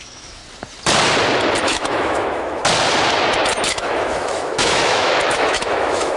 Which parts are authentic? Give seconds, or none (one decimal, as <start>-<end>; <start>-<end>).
0.4-1.6; 2.6-3.7